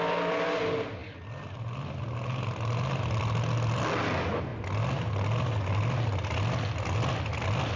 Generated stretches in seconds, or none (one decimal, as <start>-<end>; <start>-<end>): none